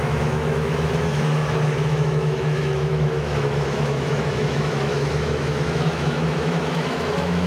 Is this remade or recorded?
remade